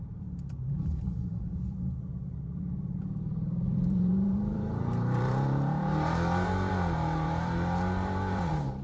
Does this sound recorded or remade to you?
remade